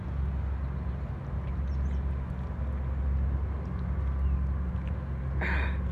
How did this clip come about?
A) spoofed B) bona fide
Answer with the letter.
B